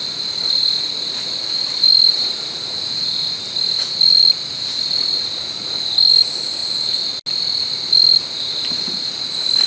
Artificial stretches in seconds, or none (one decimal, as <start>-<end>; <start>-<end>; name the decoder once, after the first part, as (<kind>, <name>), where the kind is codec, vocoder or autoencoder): none